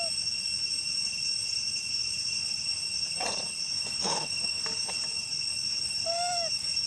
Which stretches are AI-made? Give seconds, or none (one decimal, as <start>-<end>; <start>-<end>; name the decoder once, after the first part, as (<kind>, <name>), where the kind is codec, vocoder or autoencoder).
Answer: 4.0-4.6 (autoencoder, DAC-VAE)